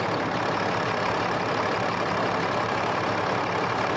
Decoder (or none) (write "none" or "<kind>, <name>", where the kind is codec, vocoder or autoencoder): none